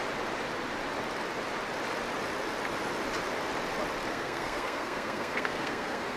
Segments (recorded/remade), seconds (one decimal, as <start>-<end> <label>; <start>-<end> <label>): 0.0-4.1 recorded; 4.1-6.2 remade